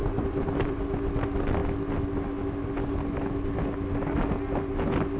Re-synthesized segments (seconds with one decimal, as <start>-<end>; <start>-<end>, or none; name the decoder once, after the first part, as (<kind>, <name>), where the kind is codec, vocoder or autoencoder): 0.0-0.8 (vocoder, BigVGAN v2)